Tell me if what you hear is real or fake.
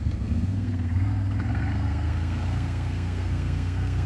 fake